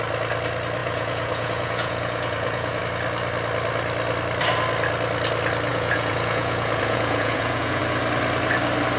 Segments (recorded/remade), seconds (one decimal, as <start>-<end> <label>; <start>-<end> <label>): 0.0-0.8 recorded; 0.8-2.8 remade; 2.8-5.7 recorded; 5.7-7.8 remade; 7.8-9.0 recorded